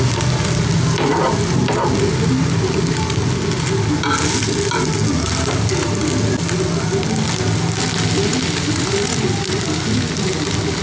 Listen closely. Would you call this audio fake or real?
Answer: real